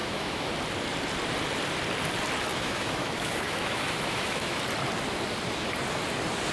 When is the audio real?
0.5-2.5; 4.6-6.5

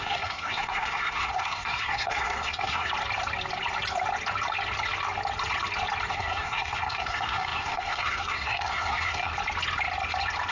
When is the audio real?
2.9-6.1; 9.3-10.5

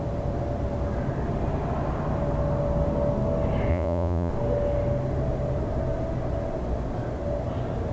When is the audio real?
0.0-3.7; 4.3-7.9

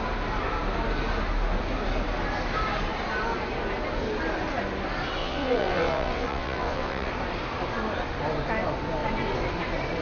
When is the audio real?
0.0-5.2; 7.1-10.0

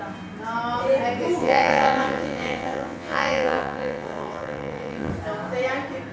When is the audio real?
0.0-1.4; 5.1-6.1

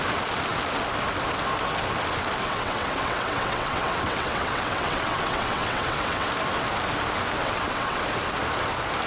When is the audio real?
0.0-2.4; 6.3-7.4; 8.0-9.1

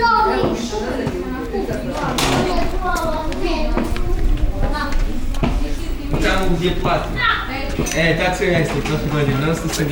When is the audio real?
0.0-0.4; 1.6-2.8; 6.7-9.9